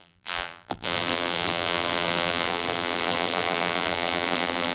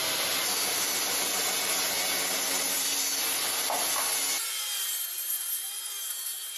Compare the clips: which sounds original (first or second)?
second